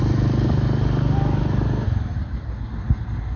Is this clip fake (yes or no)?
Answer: no